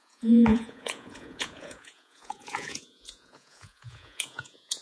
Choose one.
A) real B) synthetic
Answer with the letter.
B